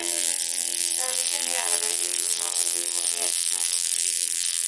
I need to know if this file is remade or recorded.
remade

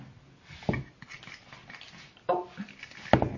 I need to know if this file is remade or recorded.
recorded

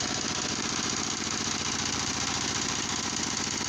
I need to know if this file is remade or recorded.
remade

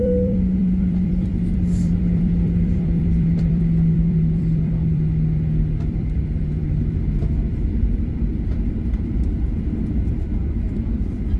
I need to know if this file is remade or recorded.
remade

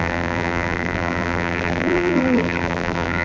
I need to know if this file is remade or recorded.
remade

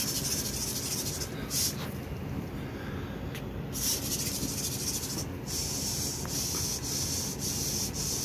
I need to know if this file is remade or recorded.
recorded